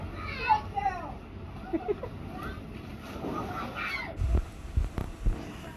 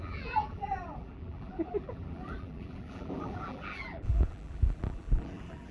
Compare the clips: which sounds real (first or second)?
first